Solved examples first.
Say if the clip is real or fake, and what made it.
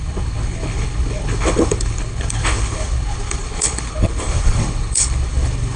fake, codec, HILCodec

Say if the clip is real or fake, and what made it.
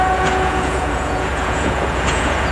fake, vocoder, Vocos